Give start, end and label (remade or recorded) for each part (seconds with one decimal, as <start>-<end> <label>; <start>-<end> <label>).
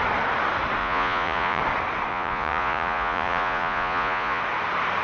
0.0-0.8 recorded; 0.8-1.6 remade; 1.6-2.1 recorded; 2.1-4.4 remade; 4.4-5.0 recorded